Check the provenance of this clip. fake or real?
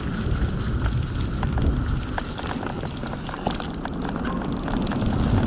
real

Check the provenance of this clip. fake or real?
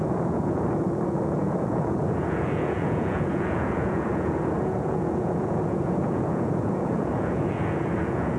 fake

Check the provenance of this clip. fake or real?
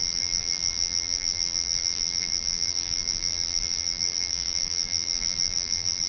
fake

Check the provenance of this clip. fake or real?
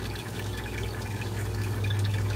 fake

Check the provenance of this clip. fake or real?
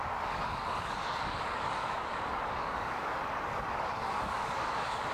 fake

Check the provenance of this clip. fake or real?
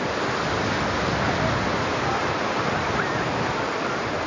real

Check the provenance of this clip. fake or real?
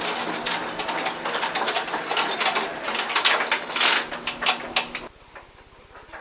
real